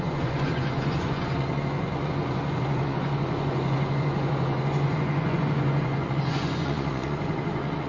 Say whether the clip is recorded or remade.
remade